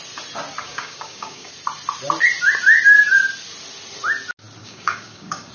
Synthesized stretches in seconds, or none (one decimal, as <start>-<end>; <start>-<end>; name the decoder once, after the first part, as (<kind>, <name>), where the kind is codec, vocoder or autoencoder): 0.6-1.5 (codec, DAC); 4.6-5.5